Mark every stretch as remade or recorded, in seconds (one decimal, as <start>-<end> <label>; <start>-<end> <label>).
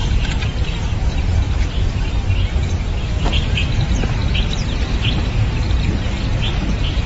0.0-3.0 remade; 3.0-7.1 recorded